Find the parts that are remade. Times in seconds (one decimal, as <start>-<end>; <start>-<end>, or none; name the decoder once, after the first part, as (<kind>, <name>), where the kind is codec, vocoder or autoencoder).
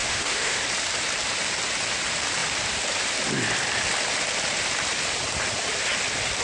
0.0-0.6 (autoencoder, DAC-VAE)